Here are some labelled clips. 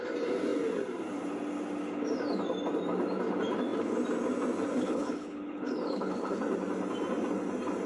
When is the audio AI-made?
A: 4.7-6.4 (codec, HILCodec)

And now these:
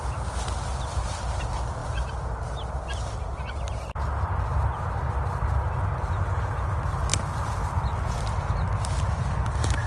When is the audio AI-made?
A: none